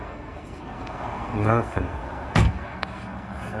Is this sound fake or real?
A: fake